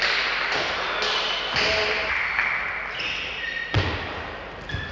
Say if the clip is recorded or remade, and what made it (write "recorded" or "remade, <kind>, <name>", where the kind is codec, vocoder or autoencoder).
recorded